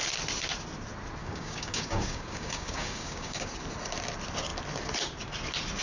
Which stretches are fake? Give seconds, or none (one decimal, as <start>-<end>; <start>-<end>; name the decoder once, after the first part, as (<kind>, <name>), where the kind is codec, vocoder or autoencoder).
1.2-3.5 (codec, DAC)